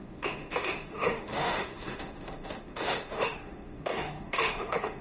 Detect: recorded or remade remade